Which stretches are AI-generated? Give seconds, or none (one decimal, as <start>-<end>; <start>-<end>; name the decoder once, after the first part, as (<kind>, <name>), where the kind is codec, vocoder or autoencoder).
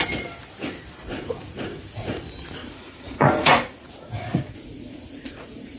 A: 1.1-2.2 (vocoder, Vocos); 2.6-5.8